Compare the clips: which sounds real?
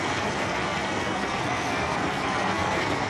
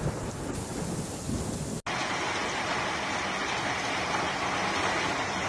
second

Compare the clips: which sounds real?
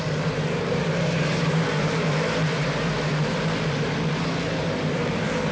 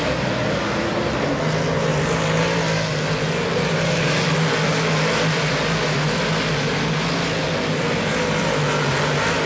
second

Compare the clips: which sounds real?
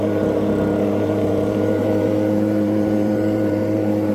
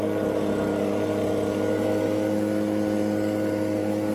second